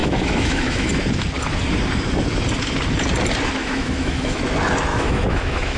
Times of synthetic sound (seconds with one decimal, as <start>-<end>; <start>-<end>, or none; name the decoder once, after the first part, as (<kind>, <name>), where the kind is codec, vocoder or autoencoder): 0.0-0.9 (autoencoder, DAC-VAE); 3.6-4.4; 4.9-5.8